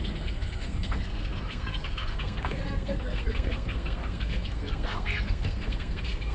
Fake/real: fake